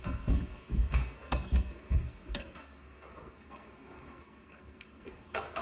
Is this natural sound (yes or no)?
no